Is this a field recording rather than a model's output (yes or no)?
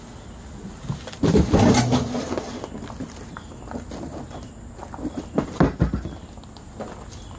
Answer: yes